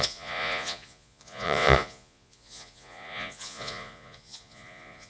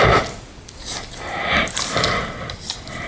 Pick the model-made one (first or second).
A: first